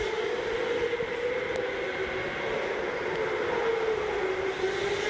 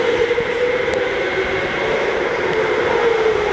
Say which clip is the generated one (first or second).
second